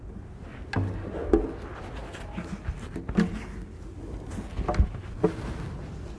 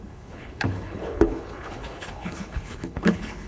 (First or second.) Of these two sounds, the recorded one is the first